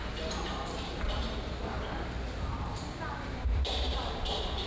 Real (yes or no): no